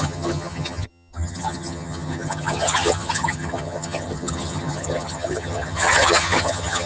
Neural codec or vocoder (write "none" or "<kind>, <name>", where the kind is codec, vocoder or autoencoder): vocoder, HiFi-GAN